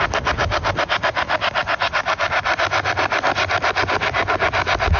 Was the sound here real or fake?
real